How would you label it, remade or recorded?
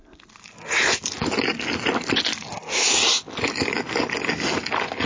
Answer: recorded